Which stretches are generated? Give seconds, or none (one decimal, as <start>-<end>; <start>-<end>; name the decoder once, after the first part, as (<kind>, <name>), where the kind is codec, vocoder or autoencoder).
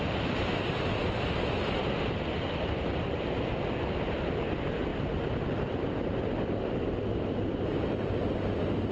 none